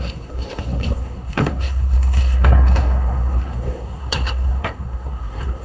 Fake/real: fake